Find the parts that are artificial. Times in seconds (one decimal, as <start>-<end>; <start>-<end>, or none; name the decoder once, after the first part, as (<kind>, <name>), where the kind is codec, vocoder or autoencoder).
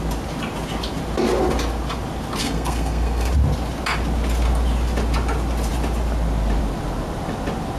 2.4-3.3 (codec, SNAC)